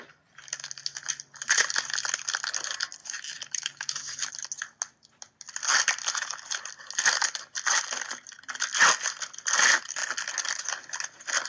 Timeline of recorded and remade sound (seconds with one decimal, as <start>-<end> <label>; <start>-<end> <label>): 0.0-3.0 recorded; 3.0-4.3 remade; 4.3-11.5 recorded